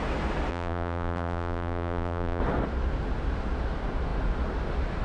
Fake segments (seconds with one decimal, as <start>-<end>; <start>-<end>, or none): 0.5-2.4